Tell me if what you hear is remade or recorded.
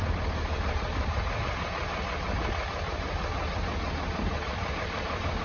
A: recorded